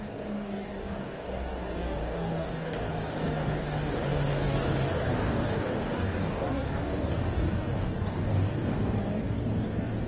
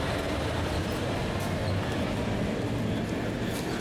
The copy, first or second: first